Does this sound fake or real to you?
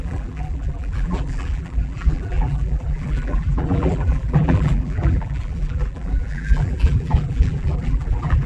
fake